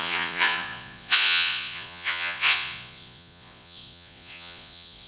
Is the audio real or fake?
fake